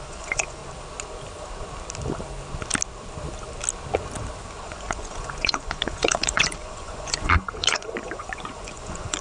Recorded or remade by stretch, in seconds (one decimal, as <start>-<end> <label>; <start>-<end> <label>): 0.0-0.6 remade; 0.6-4.4 recorded; 4.4-9.2 remade

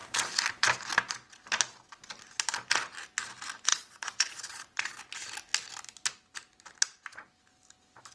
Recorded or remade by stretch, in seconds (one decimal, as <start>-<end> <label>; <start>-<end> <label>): 0.0-3.7 recorded; 3.7-5.0 remade; 5.0-8.1 recorded

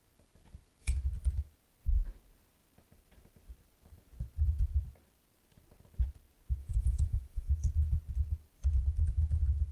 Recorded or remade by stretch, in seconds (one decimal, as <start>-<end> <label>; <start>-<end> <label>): 0.0-6.6 recorded; 6.6-7.5 remade; 7.5-9.7 recorded

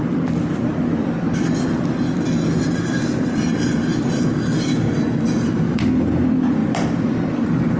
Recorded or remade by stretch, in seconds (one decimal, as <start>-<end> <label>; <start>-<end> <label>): 0.0-7.8 recorded

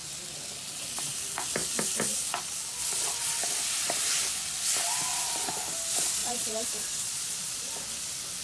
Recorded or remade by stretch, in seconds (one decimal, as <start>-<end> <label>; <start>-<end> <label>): 0.0-6.2 recorded; 6.2-7.7 remade; 7.7-8.4 recorded